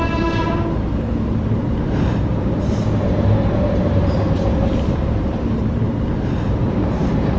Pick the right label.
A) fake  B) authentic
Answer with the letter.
A